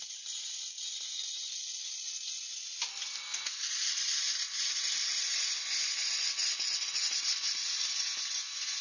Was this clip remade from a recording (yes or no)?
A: no